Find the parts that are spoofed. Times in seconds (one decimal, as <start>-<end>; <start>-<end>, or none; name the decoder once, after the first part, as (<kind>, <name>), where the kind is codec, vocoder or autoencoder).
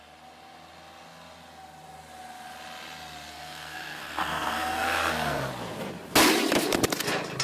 3.3-5.5 (codec, SNAC)